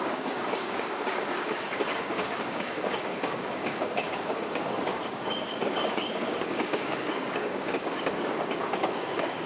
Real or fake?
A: fake